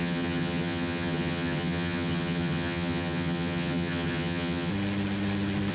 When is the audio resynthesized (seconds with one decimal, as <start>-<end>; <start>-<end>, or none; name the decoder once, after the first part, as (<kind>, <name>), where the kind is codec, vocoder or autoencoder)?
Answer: 0.0-4.7 (vocoder, HiFi-GAN)